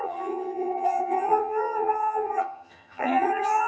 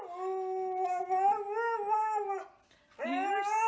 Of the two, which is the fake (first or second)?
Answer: first